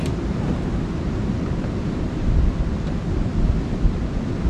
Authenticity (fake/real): real